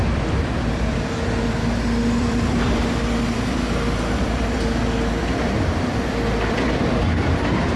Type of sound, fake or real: fake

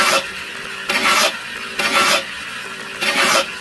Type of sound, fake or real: real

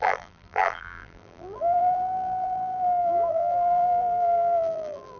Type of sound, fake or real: fake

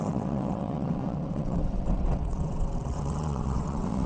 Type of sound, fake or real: fake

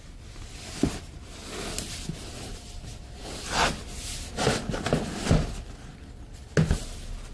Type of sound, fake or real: real